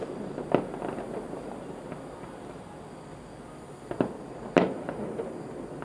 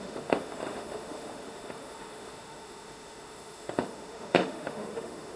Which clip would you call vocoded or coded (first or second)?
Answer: second